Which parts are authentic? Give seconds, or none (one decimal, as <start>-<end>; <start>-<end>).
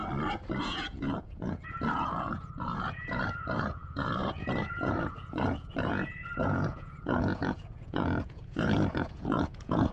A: 0.0-0.6